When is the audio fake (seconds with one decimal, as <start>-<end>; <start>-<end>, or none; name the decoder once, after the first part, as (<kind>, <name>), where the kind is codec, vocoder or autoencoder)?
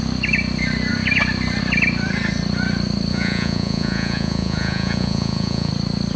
3.1-5.7 (vocoder, Vocos)